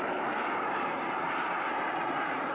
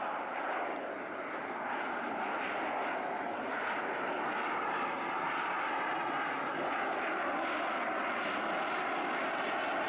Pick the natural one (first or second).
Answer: second